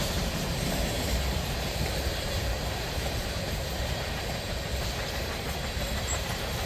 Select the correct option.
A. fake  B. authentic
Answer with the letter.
A